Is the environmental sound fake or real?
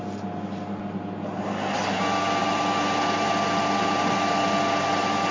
real